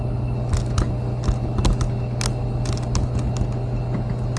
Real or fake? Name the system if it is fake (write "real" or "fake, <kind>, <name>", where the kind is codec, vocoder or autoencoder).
real